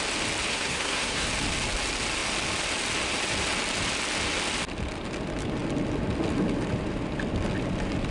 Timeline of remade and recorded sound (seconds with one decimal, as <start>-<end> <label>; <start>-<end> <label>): 0.0-0.5 recorded; 0.5-1.3 remade; 1.3-8.1 recorded